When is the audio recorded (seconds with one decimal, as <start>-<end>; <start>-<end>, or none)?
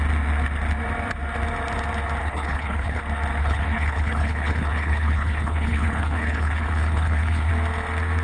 0.0-2.2; 3.0-3.4; 7.5-8.2